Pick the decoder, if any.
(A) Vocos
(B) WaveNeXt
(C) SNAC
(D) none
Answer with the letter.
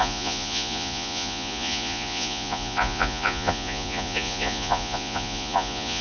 A